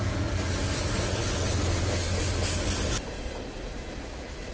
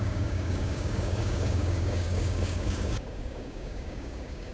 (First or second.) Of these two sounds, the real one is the first